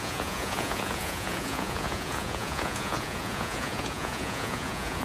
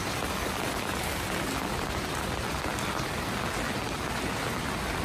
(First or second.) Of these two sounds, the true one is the second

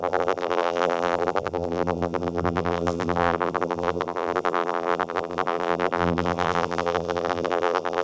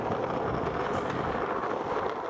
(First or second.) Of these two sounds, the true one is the second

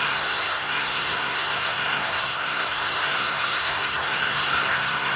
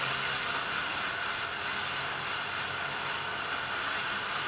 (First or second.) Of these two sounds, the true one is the second